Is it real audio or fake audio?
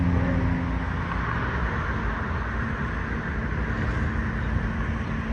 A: real